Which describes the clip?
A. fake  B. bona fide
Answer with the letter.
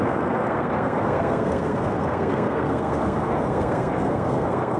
A